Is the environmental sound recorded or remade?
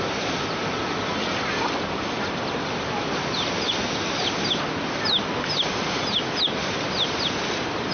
recorded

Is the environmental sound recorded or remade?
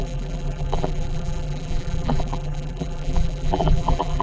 remade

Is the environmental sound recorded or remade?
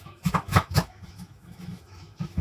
remade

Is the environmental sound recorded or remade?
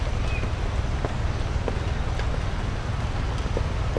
recorded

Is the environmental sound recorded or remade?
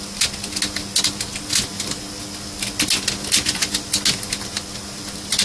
recorded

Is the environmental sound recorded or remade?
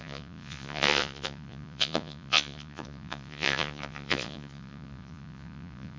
remade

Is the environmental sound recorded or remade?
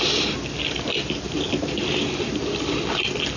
recorded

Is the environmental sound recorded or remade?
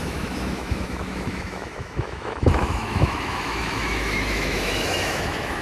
remade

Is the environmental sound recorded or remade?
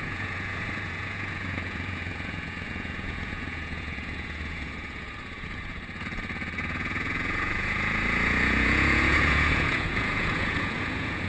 remade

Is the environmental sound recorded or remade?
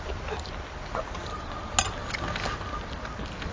recorded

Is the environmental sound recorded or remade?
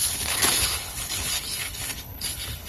remade